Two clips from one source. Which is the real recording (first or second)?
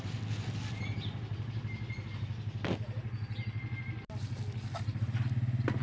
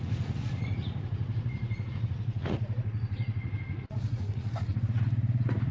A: first